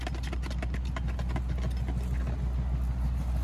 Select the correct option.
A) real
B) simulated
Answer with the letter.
A